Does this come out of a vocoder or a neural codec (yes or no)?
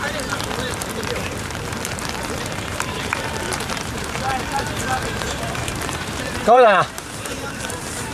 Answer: yes